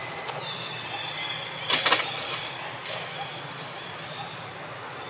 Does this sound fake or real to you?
real